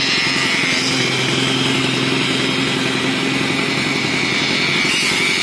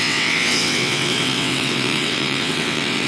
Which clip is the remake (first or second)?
second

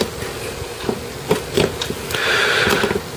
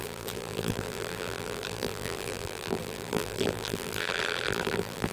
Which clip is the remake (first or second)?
second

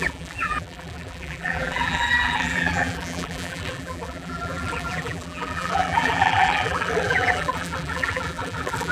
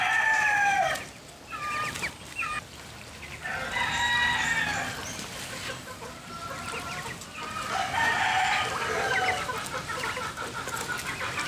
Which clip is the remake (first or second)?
first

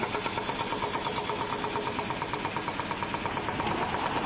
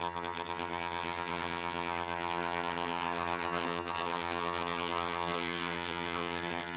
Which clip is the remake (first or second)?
second